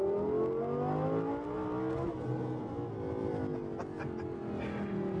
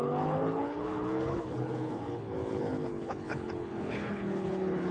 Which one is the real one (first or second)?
first